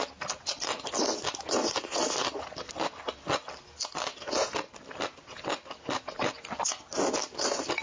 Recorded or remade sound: recorded